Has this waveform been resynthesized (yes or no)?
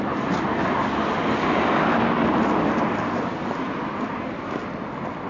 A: no